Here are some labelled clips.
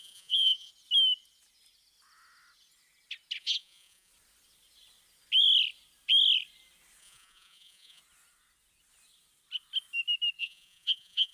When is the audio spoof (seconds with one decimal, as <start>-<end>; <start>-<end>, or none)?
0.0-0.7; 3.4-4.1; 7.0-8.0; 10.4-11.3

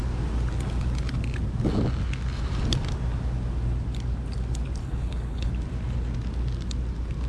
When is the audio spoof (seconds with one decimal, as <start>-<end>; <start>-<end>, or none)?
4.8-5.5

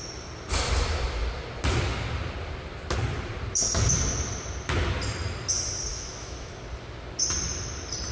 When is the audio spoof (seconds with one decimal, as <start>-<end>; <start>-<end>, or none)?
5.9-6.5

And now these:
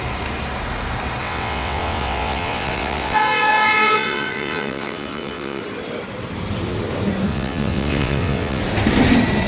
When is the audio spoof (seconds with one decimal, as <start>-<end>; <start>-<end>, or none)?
1.2-5.6; 7.3-8.6

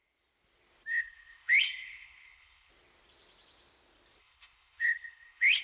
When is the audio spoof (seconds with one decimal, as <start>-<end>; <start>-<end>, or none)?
0.9-2.7; 4.2-5.6

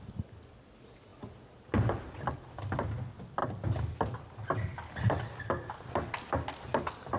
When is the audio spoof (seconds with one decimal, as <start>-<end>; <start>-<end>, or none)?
none

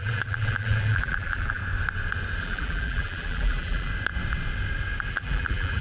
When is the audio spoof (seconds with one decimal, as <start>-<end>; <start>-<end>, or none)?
0.0-1.6; 2.4-3.9; 5.1-5.8